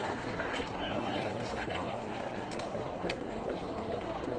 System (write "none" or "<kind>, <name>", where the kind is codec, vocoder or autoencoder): codec, SNAC